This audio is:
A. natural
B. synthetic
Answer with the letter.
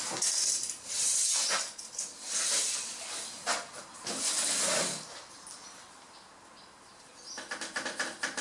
A